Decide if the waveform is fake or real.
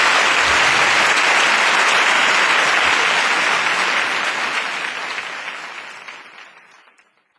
real